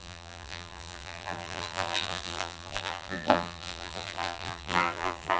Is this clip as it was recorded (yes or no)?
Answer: no